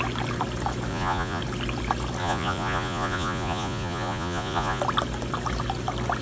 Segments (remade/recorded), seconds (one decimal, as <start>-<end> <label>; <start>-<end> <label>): 0.0-0.9 recorded; 0.9-1.4 remade; 1.4-2.2 recorded; 2.2-4.8 remade; 4.8-6.2 recorded